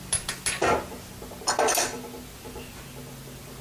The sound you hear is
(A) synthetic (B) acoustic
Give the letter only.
B